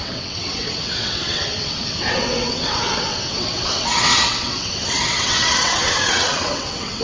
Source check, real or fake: fake